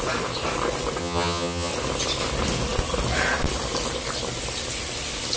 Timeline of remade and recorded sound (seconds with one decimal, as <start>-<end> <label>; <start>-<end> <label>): 0.0-1.0 recorded; 1.0-1.7 remade; 1.7-5.4 recorded